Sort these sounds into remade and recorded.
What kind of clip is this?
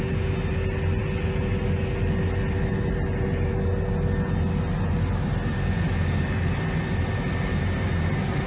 recorded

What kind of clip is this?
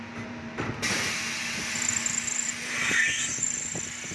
recorded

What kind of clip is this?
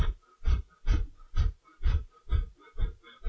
recorded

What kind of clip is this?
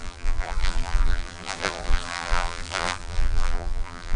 remade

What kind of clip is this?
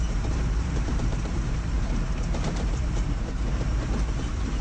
remade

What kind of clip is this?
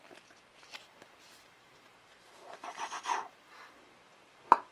recorded